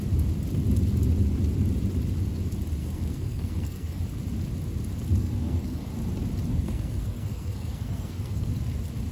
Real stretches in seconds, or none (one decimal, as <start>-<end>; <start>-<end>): 0.0-2.8; 4.0-5.2; 5.9-6.5; 8.5-9.1